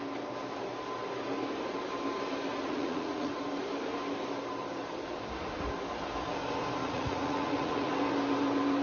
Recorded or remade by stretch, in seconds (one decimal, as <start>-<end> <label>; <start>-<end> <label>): 0.0-2.5 recorded; 2.5-3.3 remade; 3.3-6.8 recorded; 6.8-7.9 remade; 7.9-8.8 recorded